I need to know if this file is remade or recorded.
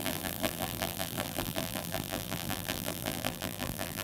remade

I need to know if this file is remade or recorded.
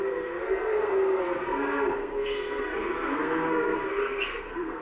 remade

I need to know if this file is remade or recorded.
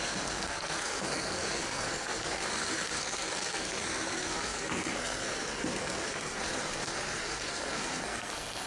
remade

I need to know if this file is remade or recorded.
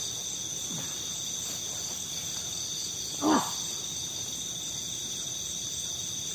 recorded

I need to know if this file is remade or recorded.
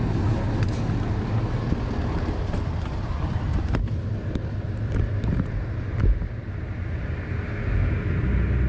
recorded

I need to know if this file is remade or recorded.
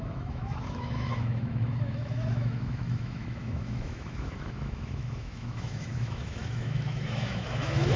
remade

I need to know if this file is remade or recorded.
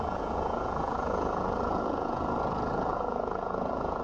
remade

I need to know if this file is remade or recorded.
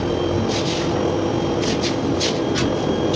recorded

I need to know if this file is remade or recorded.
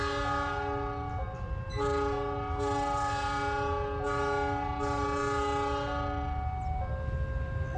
recorded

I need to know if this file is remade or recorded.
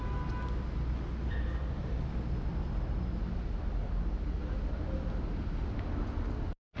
recorded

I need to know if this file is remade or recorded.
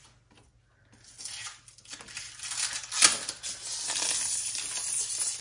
recorded